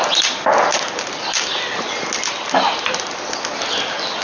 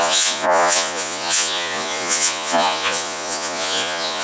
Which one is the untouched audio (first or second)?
first